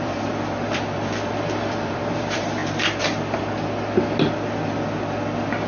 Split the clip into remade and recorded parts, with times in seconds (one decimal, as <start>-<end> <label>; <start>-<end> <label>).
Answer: 0.0-2.6 remade; 2.6-5.7 recorded